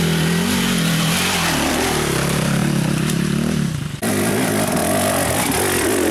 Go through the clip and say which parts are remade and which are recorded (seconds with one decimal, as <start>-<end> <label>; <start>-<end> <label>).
0.0-6.1 recorded